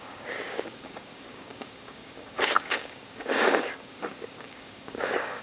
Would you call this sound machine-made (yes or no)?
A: yes